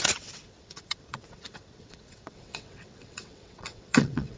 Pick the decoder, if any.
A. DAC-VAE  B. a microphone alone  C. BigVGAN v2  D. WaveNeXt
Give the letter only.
D